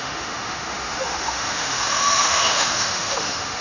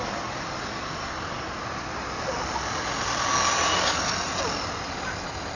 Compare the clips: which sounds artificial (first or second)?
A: first